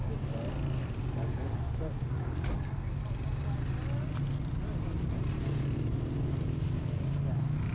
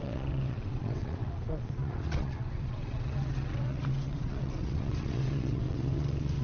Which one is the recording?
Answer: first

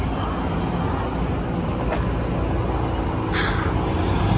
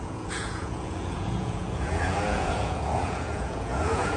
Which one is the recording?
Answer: first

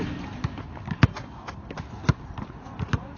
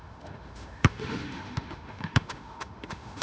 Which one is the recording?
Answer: first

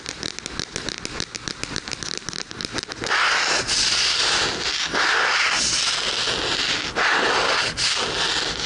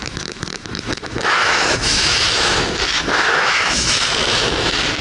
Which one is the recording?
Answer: first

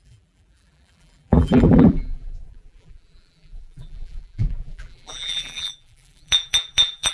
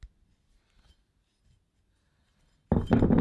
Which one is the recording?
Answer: second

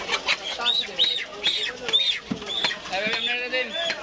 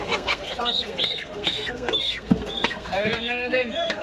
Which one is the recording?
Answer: first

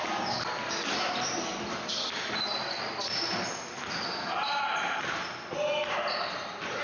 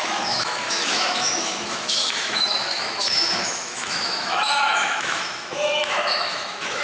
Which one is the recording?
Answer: first